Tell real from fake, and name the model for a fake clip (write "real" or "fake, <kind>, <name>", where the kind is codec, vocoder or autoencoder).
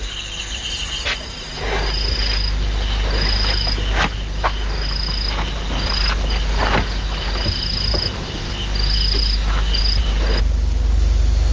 real